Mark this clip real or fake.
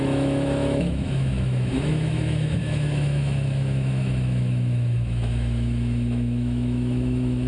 fake